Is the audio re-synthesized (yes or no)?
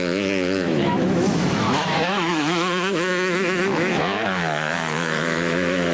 yes